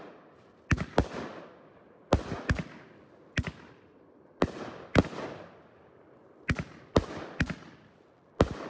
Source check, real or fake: real